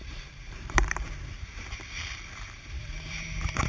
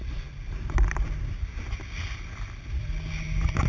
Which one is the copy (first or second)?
first